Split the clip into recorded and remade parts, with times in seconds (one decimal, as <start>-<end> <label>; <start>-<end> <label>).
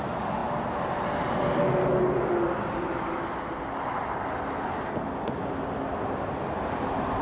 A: 0.0-7.2 recorded